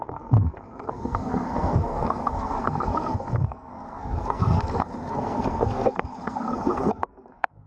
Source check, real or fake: fake